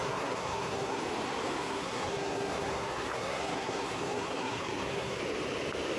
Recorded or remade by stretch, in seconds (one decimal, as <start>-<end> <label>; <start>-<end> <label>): 0.0-1.0 remade; 1.0-1.6 recorded; 1.6-5.2 remade; 5.2-6.0 recorded